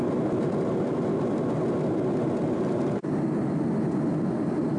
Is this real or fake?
real